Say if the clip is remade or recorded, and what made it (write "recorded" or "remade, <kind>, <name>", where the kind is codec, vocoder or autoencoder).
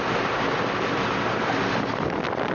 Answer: recorded